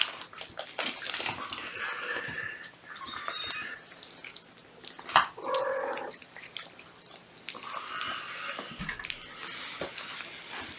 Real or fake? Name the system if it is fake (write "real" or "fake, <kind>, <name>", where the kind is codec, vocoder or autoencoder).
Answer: real